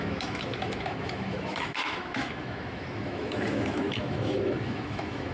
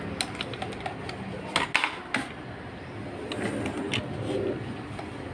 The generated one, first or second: first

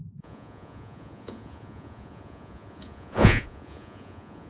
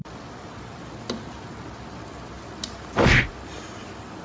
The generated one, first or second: first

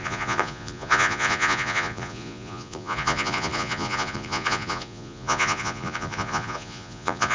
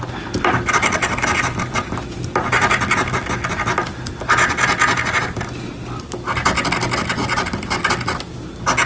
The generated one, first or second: first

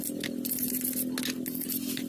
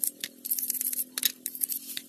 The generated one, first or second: second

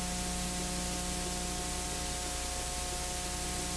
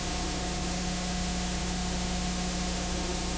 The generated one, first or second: second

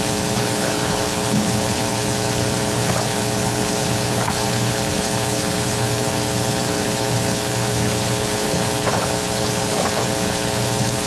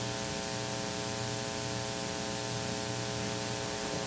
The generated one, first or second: first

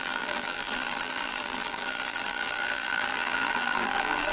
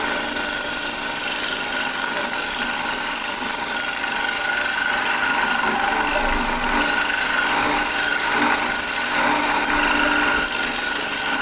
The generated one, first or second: first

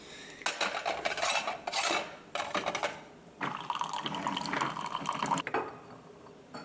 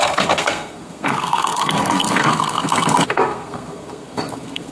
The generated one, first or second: second